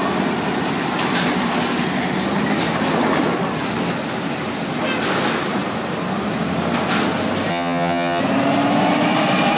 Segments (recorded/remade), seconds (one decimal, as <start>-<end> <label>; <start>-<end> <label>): 0.0-7.5 recorded; 7.5-8.2 remade; 8.2-9.6 recorded